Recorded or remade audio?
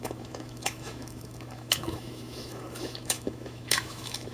remade